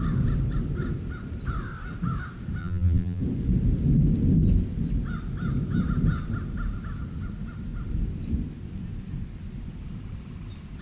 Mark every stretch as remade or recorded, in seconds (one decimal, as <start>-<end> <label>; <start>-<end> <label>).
0.0-2.6 recorded; 2.6-3.2 remade; 3.2-10.8 recorded